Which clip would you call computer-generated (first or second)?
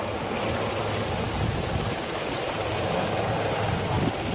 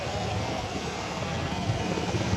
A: second